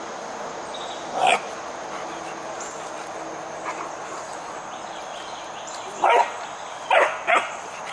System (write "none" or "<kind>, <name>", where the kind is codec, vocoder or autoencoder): none